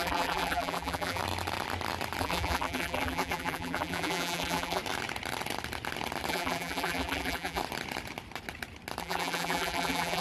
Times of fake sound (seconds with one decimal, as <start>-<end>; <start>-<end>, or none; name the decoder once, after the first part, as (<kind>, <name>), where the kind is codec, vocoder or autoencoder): 0.0-1.2 (vocoder, BigVGAN v2); 2.2-4.8; 6.3-7.6; 9.0-10.2